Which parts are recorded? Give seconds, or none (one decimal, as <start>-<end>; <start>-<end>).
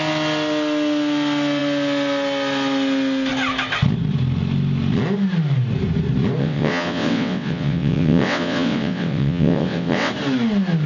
0.0-6.4; 10.1-10.9